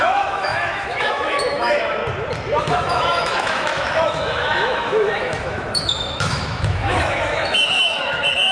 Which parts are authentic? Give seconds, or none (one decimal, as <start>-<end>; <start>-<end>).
2.0-2.6